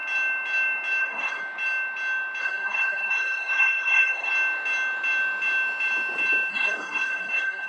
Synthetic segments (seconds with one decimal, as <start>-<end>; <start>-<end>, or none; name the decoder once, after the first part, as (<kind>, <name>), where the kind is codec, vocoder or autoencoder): 1.0-1.4 (codec, SNAC); 2.4-4.3; 6.5-7.7

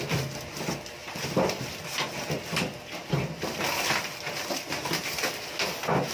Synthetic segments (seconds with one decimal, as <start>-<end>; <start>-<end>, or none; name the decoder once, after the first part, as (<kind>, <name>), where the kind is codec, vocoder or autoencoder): none